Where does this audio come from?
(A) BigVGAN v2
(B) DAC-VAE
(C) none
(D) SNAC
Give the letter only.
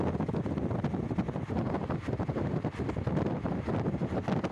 C